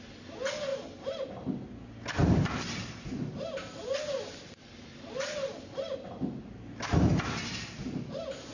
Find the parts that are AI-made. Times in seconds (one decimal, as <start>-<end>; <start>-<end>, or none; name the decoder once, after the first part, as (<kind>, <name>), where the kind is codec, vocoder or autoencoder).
none